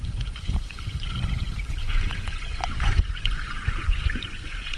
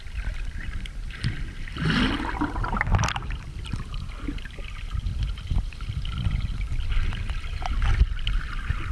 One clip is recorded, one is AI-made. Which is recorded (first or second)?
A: second